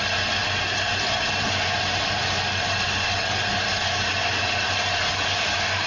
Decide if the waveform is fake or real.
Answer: real